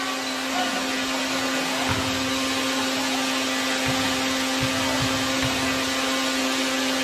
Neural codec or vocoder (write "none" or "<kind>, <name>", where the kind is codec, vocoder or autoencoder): none